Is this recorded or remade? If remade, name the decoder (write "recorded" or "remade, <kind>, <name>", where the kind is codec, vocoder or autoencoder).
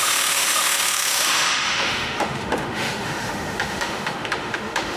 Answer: remade, autoencoder, DAC-VAE